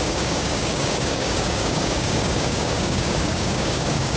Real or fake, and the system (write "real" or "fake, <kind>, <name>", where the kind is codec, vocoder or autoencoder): fake, codec, DAC